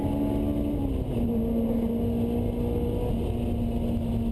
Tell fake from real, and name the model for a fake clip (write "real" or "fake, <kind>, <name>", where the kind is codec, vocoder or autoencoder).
real